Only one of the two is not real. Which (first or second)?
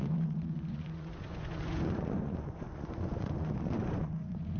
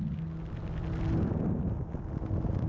first